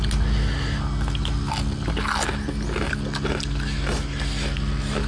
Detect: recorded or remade recorded